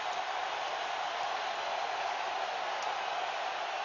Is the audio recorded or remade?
recorded